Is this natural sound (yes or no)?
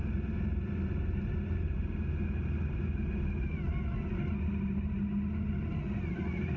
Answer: yes